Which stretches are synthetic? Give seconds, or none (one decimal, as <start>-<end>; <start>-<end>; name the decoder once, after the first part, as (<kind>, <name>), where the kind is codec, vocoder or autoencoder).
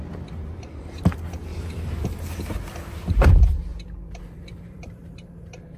0.0-1.5 (vocoder, BigVGAN v2); 3.1-5.8